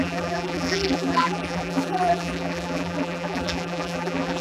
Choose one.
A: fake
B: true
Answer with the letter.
A